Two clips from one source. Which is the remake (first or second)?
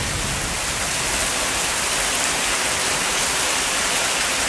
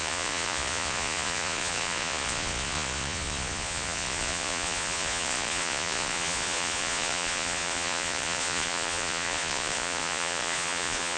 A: second